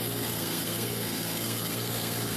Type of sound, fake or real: fake